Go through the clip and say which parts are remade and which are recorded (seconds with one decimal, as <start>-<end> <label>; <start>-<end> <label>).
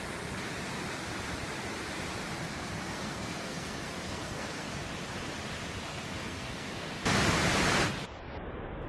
0.0-2.5 recorded; 2.5-4.7 remade; 4.7-5.9 recorded; 5.9-6.9 remade; 6.9-8.9 recorded